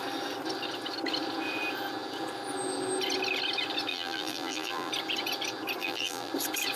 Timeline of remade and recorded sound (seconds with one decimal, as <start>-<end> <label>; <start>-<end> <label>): 0.0-3.9 recorded; 3.9-4.9 remade; 4.9-5.8 recorded; 5.8-6.3 remade; 6.3-6.8 recorded